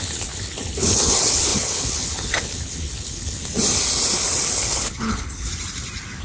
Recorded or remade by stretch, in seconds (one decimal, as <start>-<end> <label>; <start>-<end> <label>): 0.0-3.4 remade; 3.4-4.5 recorded; 4.5-5.5 remade; 5.5-6.2 recorded